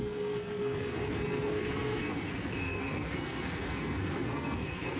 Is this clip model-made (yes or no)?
yes